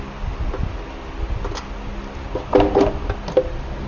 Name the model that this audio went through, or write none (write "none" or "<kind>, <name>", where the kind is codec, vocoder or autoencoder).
none